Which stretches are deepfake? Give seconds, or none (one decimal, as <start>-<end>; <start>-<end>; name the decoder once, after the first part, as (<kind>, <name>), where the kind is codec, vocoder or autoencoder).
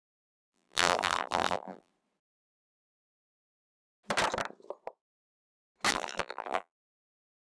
0.5-1.9 (vocoder, BigVGAN v2); 5.9-6.8